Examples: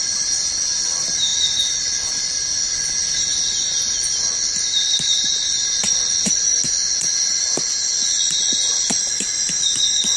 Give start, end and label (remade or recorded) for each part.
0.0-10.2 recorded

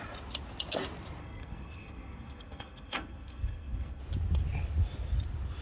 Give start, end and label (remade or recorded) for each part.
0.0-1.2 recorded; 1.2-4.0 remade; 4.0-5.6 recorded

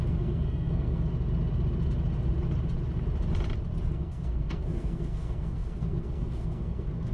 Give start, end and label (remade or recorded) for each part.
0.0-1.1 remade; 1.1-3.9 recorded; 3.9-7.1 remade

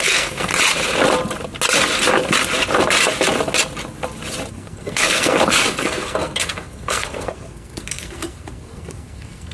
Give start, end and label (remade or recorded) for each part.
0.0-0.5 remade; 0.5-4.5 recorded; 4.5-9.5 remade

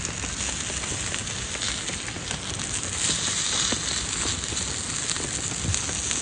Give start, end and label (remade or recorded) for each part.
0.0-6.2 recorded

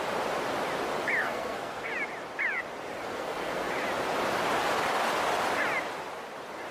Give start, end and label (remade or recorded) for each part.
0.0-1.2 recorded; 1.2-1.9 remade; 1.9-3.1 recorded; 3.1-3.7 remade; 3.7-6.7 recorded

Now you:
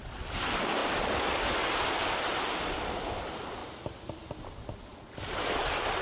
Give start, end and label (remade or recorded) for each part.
0.0-6.0 recorded

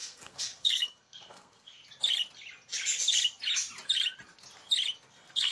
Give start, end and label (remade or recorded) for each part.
0.0-1.8 remade; 1.8-5.1 recorded; 5.1-5.5 remade